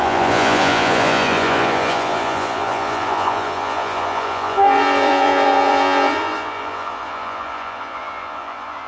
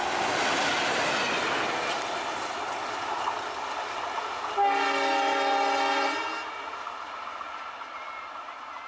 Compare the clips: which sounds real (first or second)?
second